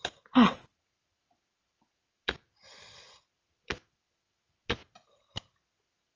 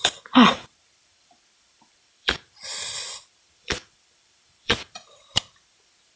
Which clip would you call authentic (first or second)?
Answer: first